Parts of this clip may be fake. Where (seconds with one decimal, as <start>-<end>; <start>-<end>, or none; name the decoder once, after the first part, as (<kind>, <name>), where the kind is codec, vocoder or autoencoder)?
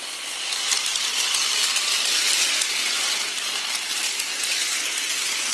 none